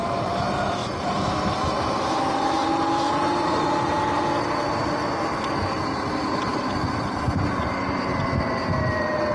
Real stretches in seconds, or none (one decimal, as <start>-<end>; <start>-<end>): 0.0-6.5; 7.7-9.3